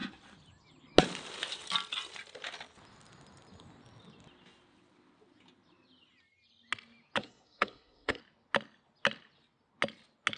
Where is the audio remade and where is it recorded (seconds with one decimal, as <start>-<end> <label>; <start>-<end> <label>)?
0.0-7.2 recorded; 7.2-8.2 remade; 8.2-10.4 recorded